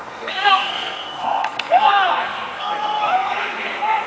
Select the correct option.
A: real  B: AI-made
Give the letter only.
B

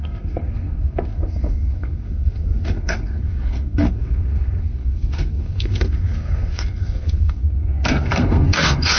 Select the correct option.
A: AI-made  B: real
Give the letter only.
A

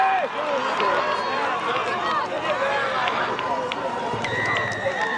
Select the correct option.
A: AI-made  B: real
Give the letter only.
B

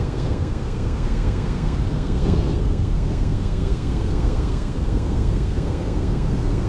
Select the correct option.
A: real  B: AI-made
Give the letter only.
B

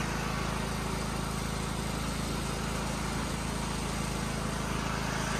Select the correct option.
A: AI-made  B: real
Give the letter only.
B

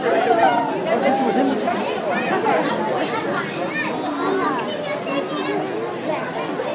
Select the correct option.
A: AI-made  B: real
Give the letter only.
B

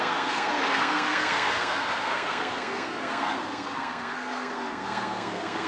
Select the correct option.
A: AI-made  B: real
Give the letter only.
A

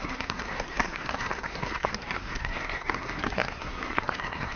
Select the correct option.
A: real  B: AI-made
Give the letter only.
B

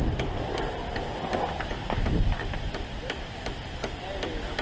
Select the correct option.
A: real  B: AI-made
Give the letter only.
A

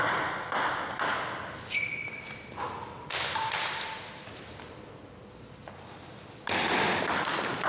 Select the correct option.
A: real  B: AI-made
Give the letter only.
A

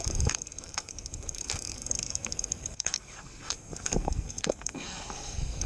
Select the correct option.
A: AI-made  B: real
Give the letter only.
A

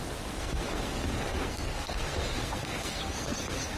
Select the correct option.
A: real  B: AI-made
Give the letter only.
B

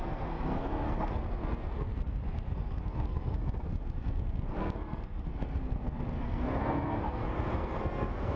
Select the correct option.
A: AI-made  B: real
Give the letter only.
A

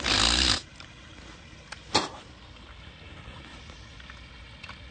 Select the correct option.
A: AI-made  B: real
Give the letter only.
B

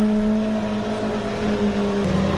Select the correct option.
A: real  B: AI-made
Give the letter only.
A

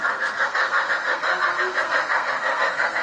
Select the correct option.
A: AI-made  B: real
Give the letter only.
A